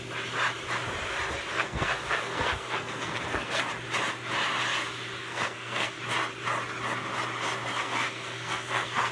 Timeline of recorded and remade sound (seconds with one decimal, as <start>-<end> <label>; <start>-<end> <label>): 0.0-1.5 recorded; 1.5-3.7 remade; 3.7-5.2 recorded; 5.2-6.0 remade; 6.0-7.7 recorded; 7.7-9.1 remade